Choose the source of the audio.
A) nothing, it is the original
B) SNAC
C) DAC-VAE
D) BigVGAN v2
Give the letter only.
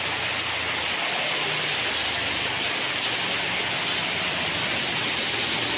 A